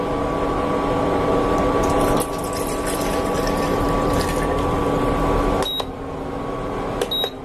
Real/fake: real